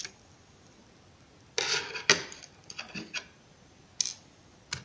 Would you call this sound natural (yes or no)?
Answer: yes